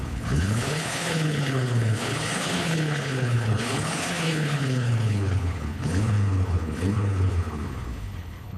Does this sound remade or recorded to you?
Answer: remade